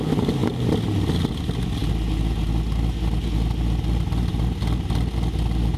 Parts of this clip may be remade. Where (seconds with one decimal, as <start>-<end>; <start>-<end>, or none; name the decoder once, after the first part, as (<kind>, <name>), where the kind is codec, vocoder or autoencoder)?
none